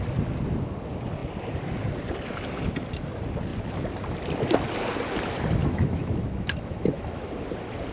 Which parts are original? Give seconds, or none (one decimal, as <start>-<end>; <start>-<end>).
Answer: 0.0-5.6; 7.3-7.9